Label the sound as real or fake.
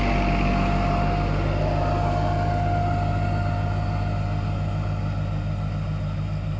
real